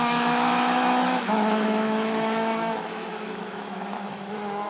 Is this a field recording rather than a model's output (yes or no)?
no